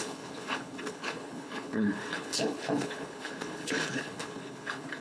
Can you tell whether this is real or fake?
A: fake